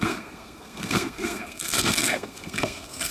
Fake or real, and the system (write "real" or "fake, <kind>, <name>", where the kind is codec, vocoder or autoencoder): fake, codec, SNAC